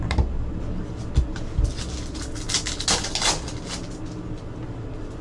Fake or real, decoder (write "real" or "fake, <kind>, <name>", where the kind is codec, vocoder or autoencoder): real